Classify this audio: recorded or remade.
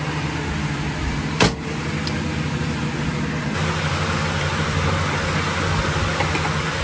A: recorded